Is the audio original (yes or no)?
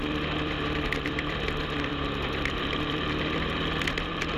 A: no